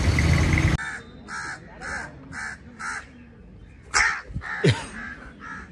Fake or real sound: real